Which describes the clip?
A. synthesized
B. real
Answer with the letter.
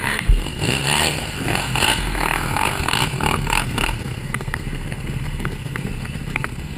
A